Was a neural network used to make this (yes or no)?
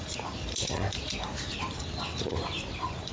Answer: yes